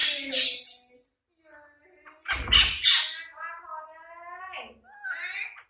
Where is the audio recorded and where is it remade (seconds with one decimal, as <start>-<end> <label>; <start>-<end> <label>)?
0.0-5.7 recorded